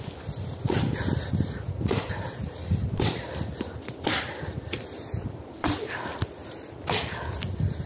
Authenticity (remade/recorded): remade